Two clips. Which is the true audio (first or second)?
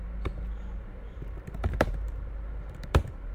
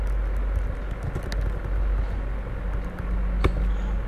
second